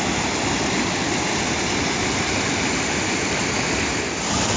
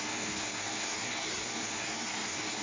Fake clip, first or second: second